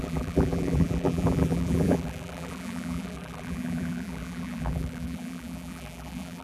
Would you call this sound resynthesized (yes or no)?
yes